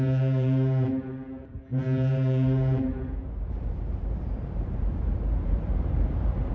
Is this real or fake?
fake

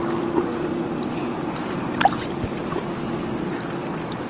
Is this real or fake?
real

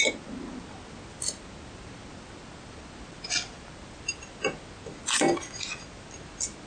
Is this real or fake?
real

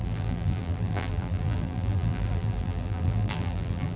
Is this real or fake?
fake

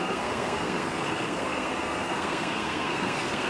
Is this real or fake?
fake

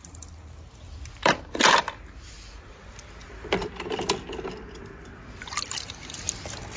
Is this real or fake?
real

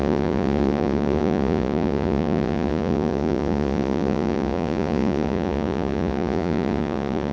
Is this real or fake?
fake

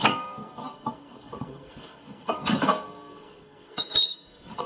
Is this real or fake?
fake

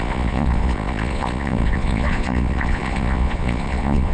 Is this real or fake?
fake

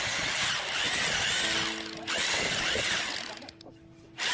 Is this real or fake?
real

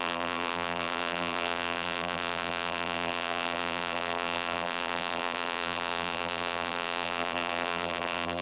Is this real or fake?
fake